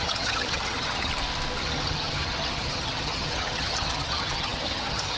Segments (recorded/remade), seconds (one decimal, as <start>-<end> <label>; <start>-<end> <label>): 0.0-1.1 remade; 1.1-1.6 recorded; 1.6-5.2 remade